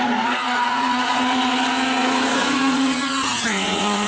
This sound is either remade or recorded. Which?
remade